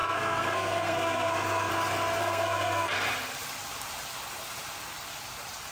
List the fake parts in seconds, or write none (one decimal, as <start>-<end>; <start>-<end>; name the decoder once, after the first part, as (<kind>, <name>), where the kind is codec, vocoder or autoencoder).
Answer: 0.0-1.7 (codec, SNAC); 2.2-2.9